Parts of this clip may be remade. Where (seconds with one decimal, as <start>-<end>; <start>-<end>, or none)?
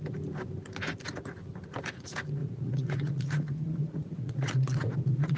2.4-5.4